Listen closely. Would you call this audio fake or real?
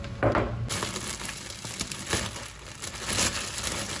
real